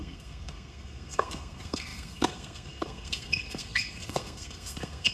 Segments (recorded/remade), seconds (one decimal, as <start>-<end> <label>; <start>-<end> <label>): 0.0-5.1 remade